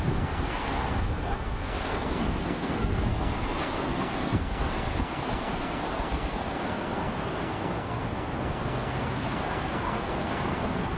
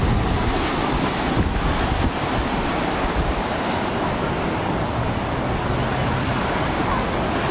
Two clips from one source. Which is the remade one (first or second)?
first